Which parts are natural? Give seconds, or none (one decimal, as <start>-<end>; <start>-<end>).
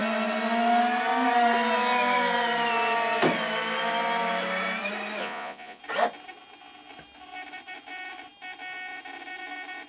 0.0-5.2; 5.8-9.9